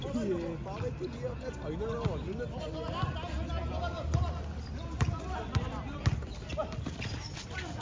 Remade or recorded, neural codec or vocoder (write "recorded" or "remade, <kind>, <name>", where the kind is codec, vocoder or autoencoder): recorded